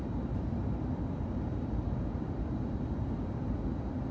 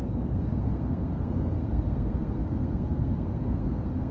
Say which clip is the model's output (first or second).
second